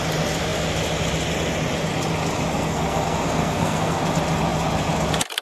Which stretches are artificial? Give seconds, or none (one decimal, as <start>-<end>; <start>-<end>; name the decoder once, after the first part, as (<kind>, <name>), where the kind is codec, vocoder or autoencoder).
2.5-4.0 (codec, SNAC)